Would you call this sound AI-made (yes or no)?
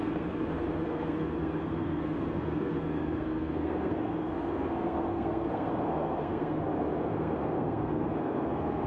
yes